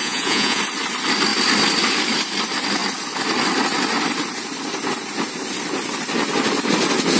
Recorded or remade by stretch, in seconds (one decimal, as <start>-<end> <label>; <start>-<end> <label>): 0.0-0.6 remade; 0.6-7.2 recorded

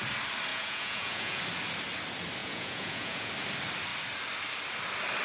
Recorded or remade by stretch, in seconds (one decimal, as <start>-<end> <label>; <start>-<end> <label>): 0.0-0.5 recorded; 0.5-1.4 remade; 1.4-2.4 recorded; 2.4-3.3 remade; 3.3-5.2 recorded

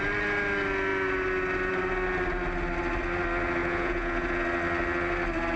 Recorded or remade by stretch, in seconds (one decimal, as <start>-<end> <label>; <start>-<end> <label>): 0.0-3.6 recorded; 3.6-4.4 remade; 4.4-5.6 recorded

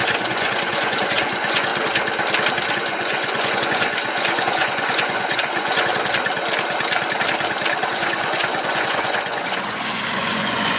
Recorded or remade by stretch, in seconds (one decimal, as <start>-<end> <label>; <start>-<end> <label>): 0.0-1.7 remade; 1.7-2.7 recorded; 2.7-5.9 remade; 5.9-7.9 recorded; 7.9-10.8 remade

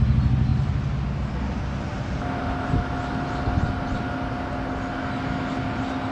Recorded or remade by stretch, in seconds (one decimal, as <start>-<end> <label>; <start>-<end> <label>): 0.0-6.1 recorded

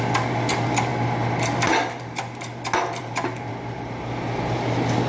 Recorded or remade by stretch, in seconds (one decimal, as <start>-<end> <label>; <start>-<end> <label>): 0.0-5.1 recorded

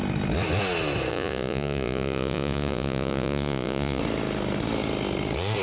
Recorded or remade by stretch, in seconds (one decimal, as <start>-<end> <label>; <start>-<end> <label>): 0.0-1.1 recorded; 1.1-4.0 remade; 4.0-5.6 recorded

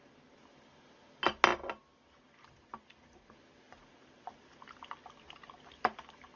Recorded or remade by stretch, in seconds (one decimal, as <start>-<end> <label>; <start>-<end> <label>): 0.0-6.4 recorded